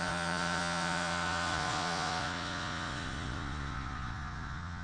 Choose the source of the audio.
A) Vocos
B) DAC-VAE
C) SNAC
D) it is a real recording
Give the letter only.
A